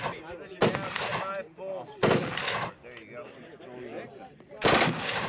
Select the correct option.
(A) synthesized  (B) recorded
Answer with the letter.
B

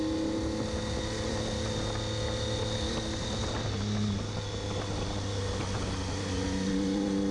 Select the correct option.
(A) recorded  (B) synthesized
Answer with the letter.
A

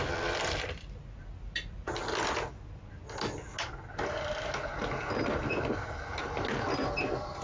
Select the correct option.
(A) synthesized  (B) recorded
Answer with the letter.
B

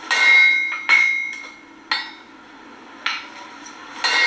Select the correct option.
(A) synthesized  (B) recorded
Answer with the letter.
B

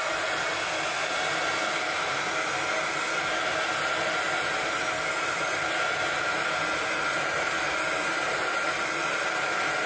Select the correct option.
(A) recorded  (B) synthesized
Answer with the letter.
A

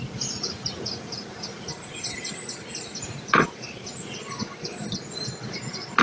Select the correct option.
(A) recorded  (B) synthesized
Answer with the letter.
A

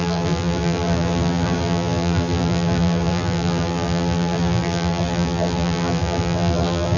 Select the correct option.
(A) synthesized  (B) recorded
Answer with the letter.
A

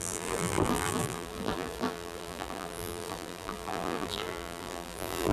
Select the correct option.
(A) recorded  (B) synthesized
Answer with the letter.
B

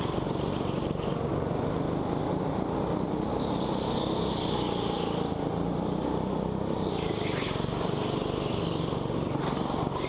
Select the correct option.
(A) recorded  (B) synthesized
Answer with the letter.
A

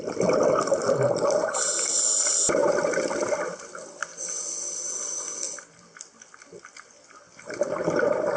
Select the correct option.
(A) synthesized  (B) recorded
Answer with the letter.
B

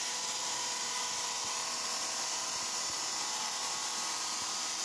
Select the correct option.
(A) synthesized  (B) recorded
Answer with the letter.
A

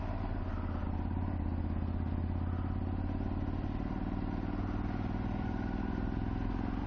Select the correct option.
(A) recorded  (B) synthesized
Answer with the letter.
A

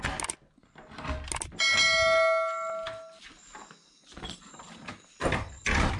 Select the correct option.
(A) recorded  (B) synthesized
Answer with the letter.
A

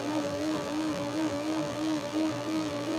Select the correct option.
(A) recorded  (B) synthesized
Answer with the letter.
B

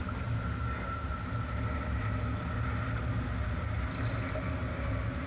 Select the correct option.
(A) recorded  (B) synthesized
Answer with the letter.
A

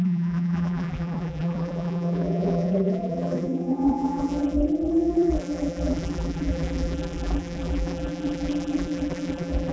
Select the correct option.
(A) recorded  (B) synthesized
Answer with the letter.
B